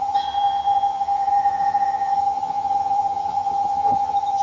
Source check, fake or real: fake